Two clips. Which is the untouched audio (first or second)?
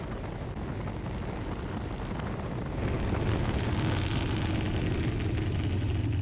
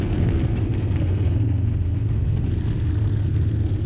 first